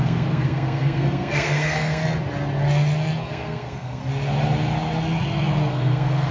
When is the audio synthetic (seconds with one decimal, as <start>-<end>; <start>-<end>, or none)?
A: 0.0-2.0; 3.3-4.0; 5.7-6.3